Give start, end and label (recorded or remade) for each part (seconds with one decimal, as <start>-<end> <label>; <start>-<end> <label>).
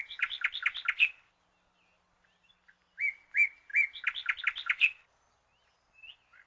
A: 0.0-6.5 recorded